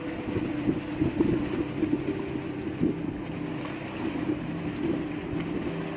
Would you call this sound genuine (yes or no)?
yes